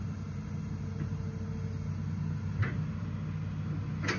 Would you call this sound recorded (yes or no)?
yes